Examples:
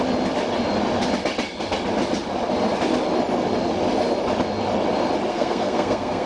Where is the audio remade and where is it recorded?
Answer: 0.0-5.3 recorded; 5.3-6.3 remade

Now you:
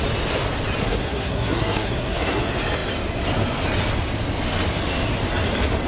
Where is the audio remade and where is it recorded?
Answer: 0.0-0.8 recorded; 0.8-2.4 remade; 2.4-5.9 recorded

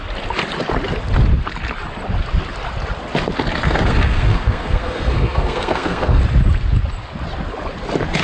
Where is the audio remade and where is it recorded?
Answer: 0.0-3.6 recorded; 3.6-6.2 remade; 6.2-8.2 recorded

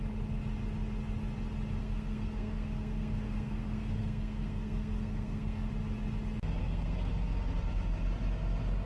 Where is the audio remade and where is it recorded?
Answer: 0.0-1.8 recorded; 1.8-5.7 remade; 5.7-6.6 recorded; 6.6-7.1 remade; 7.1-8.9 recorded

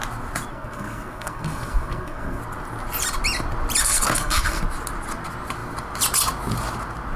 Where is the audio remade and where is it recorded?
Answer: 0.0-0.5 recorded; 0.5-2.4 remade; 2.4-3.8 recorded; 3.8-4.6 remade; 4.6-7.2 recorded

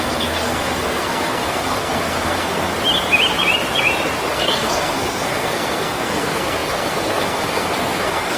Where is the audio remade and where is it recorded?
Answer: 0.0-2.7 remade; 2.7-4.3 recorded; 4.3-8.4 remade